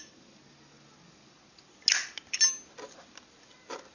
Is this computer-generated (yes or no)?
no